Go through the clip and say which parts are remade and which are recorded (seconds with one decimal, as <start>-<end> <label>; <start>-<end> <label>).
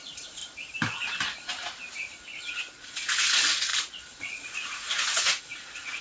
0.0-0.4 remade; 0.4-2.3 recorded; 2.3-3.7 remade; 3.7-4.2 recorded; 4.2-6.0 remade